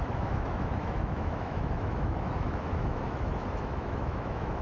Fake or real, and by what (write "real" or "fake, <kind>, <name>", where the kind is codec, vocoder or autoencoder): fake, autoencoder, DAC-VAE